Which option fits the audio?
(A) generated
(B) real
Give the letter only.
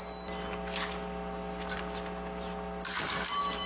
B